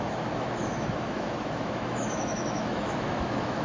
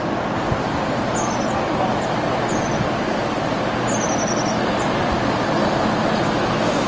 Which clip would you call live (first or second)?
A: second